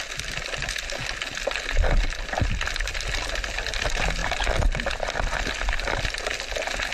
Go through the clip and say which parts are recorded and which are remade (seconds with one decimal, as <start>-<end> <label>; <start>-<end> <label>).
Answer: 0.0-6.9 recorded